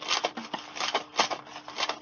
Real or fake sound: real